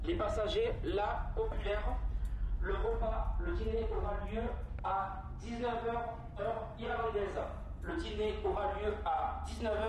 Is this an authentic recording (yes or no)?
yes